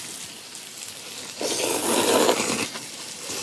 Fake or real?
real